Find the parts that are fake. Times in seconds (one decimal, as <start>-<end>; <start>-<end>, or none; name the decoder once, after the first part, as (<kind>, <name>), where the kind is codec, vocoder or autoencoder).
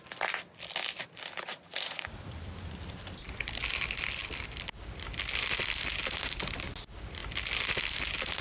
1.5-2.4 (vocoder, Vocos)